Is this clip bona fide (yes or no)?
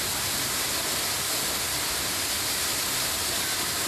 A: yes